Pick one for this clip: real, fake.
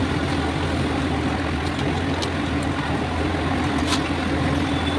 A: real